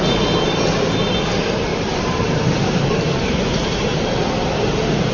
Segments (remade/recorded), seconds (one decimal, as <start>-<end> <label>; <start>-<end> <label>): 0.0-1.7 recorded; 1.7-5.1 remade